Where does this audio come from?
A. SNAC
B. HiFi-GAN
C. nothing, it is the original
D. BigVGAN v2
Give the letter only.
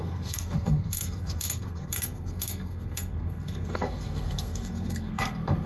A